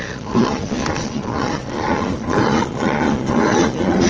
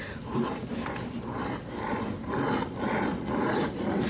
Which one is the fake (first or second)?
first